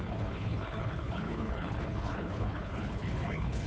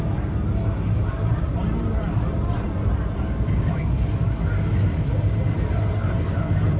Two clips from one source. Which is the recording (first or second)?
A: second